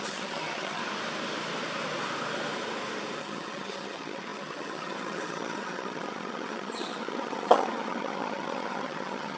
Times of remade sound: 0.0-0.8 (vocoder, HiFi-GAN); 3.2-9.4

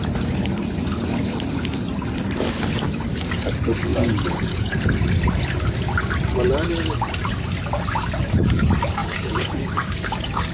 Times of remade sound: 3.9-4.9 (vocoder, Vocos); 9.0-9.6

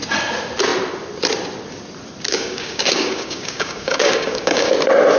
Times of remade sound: 2.3-4.7 (codec, DAC)

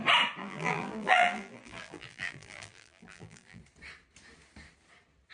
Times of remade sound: 0.4-3.6 (vocoder, BigVGAN v2)

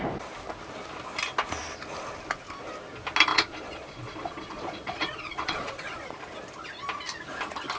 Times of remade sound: 3.3-6.1 (vocoder, Vocos)

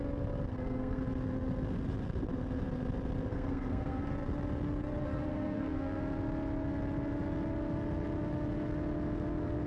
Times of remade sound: 0.5-1.0 (codec, SNAC); 3.3-4.0; 5.3-6.0

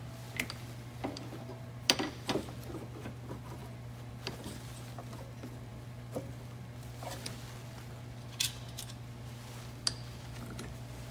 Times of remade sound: none